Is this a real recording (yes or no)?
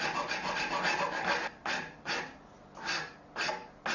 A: yes